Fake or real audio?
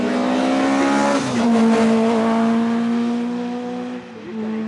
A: real